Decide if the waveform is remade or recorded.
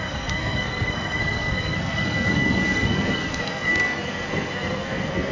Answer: remade